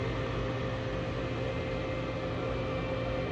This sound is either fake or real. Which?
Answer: real